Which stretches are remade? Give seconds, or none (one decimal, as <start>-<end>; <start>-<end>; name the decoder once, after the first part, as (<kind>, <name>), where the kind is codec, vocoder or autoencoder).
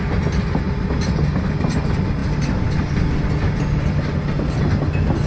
none